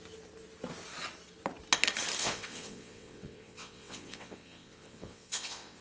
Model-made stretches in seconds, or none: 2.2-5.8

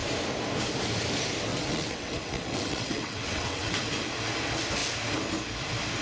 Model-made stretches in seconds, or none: 1.5-3.8

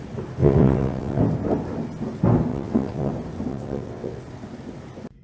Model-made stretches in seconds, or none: 0.4-1.2; 2.5-3.1; 3.5-4.2

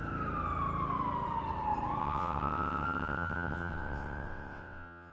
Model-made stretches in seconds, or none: 2.0-5.1

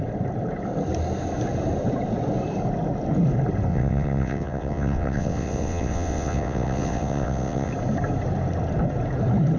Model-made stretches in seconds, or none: 3.7-7.7

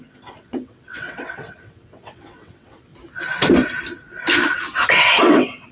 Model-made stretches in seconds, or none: 0.0-2.9; 4.9-5.7

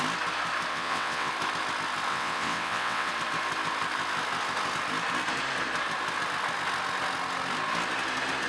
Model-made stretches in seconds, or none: 0.7-1.3; 2.1-3.1